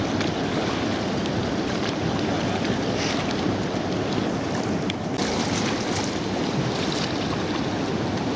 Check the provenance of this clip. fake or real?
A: real